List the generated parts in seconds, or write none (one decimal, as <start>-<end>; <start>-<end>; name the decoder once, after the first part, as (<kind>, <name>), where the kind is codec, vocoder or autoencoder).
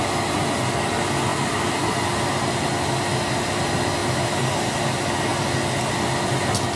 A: 1.3-2.2 (vocoder, BigVGAN v2); 4.0-4.8